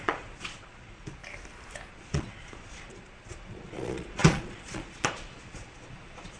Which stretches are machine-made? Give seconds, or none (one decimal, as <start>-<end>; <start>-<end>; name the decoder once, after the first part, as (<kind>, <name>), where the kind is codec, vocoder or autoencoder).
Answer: 0.0-1.2 (vocoder, Vocos); 1.9-6.4